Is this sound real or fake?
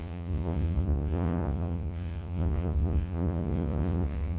fake